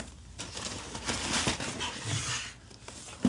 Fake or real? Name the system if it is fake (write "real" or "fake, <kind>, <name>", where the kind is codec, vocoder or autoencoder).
real